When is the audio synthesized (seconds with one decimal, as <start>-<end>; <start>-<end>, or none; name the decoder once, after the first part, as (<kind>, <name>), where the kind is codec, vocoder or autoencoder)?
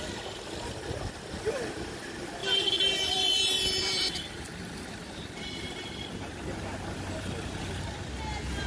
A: 2.4-5.4 (vocoder, BigVGAN v2)